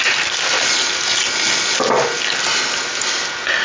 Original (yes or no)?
yes